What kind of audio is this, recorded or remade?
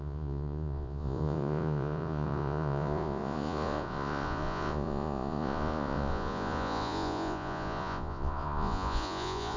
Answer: remade